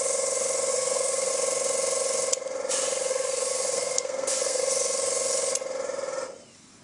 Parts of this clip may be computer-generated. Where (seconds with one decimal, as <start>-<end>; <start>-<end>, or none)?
0.7-1.3; 3.1-4.6